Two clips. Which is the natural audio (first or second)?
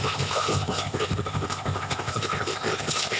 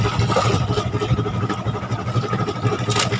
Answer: second